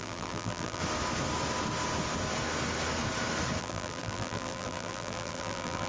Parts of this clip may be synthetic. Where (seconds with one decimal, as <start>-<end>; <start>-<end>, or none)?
0.0-0.8; 3.6-5.9